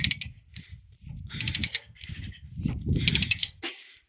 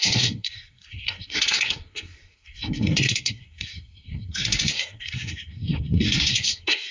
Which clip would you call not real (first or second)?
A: second